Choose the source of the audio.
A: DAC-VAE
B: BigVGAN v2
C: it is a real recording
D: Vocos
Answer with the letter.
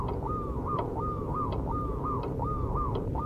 B